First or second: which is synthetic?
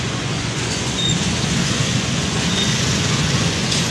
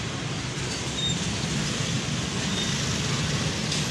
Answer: first